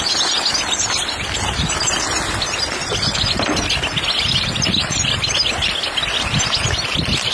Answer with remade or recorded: recorded